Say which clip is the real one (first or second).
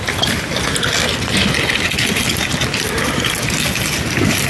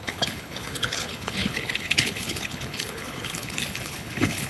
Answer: first